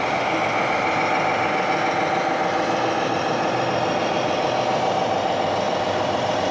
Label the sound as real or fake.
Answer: real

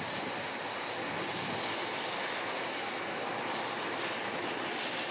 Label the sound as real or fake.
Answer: real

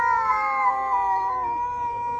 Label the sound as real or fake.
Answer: real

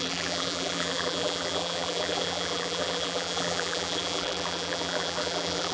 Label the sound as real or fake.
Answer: fake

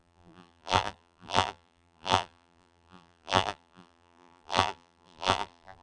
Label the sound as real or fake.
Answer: fake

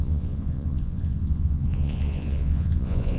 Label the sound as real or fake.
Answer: fake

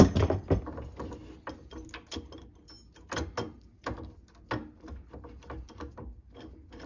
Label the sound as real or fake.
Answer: real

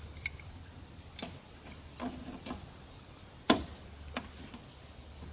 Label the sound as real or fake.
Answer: real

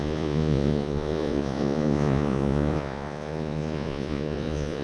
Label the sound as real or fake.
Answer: fake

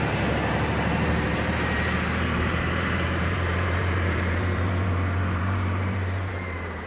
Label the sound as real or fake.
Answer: fake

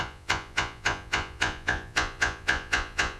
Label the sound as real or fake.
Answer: fake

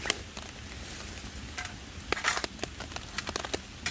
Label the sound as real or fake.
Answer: real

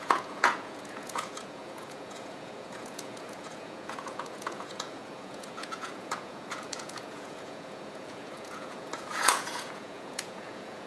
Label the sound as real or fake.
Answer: fake